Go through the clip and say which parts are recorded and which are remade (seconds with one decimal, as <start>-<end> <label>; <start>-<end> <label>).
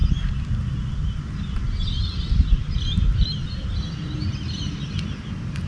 0.0-5.7 recorded